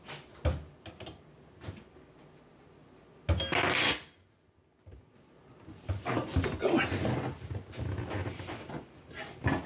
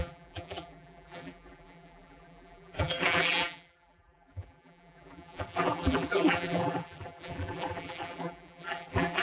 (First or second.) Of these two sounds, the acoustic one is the first